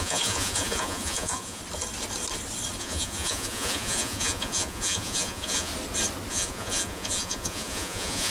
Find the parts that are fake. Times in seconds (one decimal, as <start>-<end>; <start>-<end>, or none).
0.0-1.6; 2.8-5.7; 6.3-8.3